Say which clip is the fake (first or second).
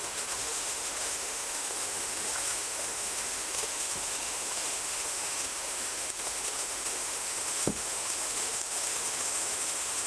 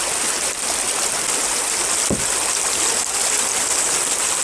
first